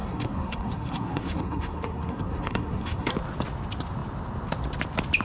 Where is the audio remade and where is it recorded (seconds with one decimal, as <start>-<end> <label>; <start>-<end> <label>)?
0.0-3.1 remade; 3.1-5.2 recorded